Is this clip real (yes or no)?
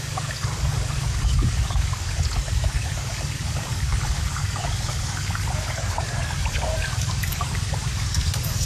no